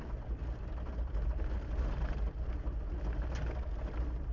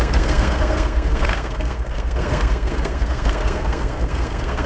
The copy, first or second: second